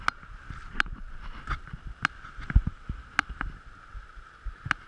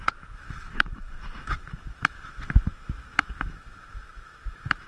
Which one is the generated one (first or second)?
second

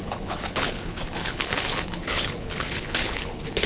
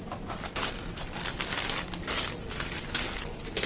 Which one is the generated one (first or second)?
first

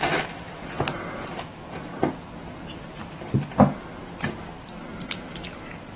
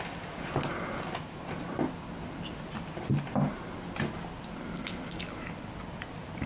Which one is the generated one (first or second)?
first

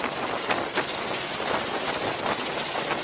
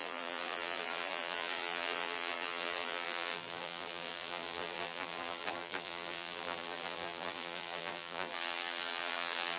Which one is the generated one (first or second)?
second